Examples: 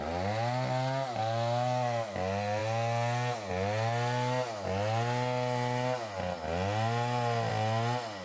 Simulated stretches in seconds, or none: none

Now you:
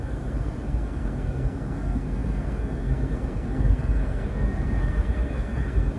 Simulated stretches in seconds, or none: 0.0-6.0 (codec, SNAC)

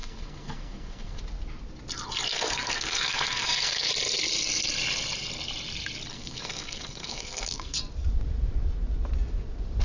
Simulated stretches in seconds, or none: 0.0-1.2 (codec, SNAC); 2.3-3.9; 6.1-7.8

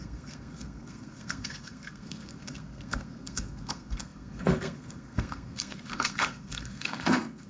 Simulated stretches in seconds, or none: 0.0-7.5 (codec, SNAC)

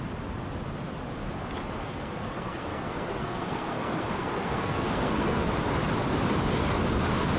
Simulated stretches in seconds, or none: 1.8-5.5 (codec, SNAC)

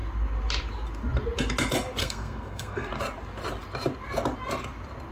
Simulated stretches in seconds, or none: 2.0-2.9 (codec, SNAC)

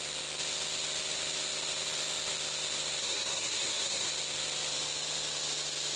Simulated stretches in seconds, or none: 3.0-4.1 (codec, SNAC)

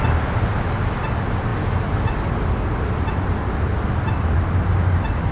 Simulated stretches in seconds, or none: none